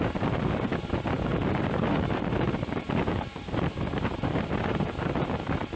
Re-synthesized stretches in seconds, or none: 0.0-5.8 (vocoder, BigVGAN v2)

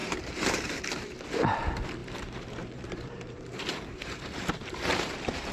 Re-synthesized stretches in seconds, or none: 0.0-0.8 (vocoder, BigVGAN v2); 2.0-5.5

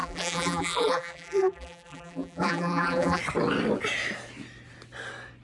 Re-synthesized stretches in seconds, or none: 0.0-3.2 (vocoder, BigVGAN v2)

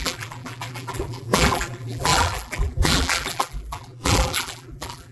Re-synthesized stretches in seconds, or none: 0.0-5.1 (vocoder, BigVGAN v2)

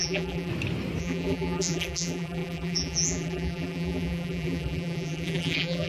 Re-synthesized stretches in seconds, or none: 0.0-0.5 (vocoder, BigVGAN v2); 1.0-5.9

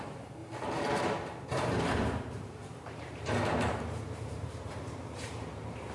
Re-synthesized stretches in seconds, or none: 0.0-0.4 (vocoder, BigVGAN v2); 1.0-5.9